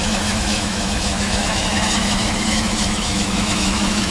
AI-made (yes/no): yes